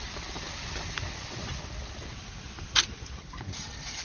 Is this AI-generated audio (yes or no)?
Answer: no